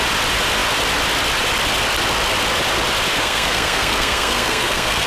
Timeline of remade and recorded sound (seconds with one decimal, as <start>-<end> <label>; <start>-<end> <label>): 0.0-3.2 recorded; 3.2-5.1 remade